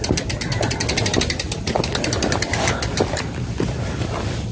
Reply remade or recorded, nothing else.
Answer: recorded